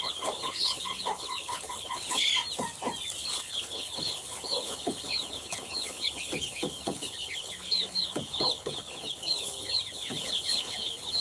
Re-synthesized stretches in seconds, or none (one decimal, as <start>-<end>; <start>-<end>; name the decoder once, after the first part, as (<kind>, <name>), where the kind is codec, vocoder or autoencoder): 0.0-2.3 (codec, HILCodec); 3.2-11.2